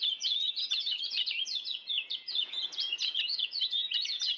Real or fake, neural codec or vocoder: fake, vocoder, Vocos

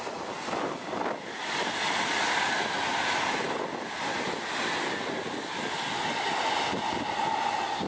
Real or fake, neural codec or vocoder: real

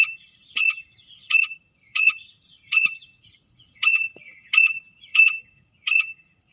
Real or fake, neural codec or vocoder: fake, vocoder, Vocos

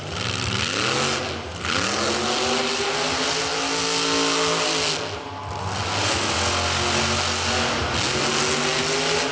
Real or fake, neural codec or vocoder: real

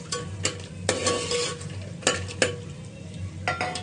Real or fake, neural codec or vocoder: real